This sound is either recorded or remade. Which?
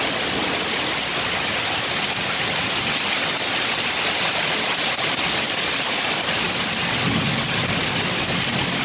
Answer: recorded